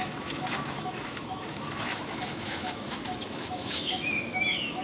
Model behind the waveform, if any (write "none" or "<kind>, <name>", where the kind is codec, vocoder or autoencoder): autoencoder, DAC-VAE